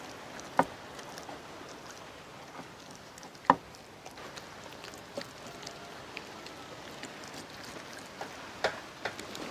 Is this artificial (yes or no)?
no